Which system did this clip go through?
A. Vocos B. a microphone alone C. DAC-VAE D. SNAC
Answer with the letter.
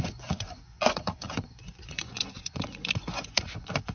A